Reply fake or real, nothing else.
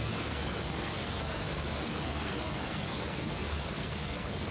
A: fake